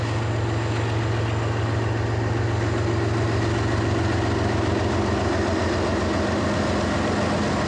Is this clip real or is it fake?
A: real